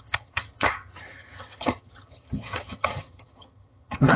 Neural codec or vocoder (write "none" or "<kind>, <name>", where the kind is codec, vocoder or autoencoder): vocoder, HiFi-GAN